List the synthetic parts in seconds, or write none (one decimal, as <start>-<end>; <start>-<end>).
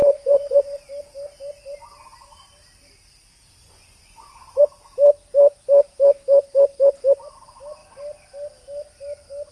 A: 0.0-0.8; 3.6-4.6